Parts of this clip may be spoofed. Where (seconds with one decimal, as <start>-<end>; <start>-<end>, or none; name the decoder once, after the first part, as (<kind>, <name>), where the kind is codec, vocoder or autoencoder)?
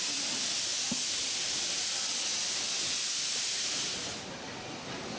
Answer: none